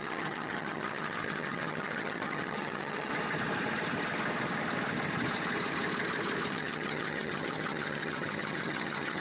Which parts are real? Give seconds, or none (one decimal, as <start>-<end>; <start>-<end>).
3.1-6.5